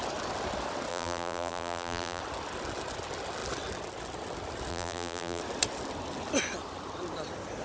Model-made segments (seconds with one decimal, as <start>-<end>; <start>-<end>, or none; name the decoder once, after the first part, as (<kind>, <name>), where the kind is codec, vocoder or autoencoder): 0.9-2.2 (vocoder, BigVGAN v2); 4.7-5.4